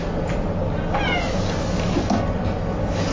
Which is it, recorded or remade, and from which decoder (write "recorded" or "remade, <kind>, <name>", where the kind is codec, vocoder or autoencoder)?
recorded